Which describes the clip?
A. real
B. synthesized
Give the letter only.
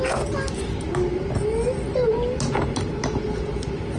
A